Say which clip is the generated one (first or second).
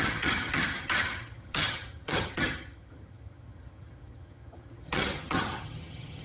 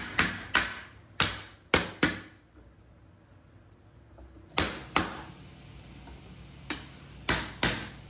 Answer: first